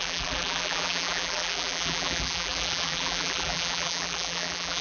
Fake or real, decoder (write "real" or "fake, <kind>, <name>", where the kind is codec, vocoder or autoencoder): fake, vocoder, BigVGAN v2